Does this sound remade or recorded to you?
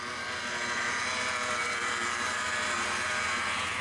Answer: recorded